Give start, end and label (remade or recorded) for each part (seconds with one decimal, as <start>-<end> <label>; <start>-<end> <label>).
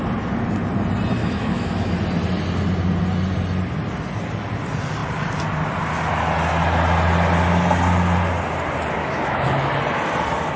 0.0-1.2 recorded; 1.2-2.0 remade; 2.0-9.0 recorded; 9.0-9.7 remade; 9.7-10.6 recorded